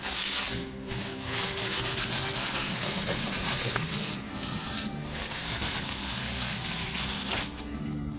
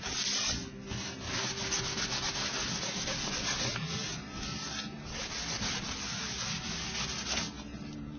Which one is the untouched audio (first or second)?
second